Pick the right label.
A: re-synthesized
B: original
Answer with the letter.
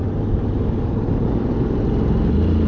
B